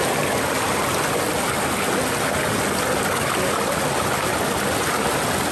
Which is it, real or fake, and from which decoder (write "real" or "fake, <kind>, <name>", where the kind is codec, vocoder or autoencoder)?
real